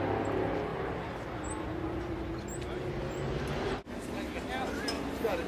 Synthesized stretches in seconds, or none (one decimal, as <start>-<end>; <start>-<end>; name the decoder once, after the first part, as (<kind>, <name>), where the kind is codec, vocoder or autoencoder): none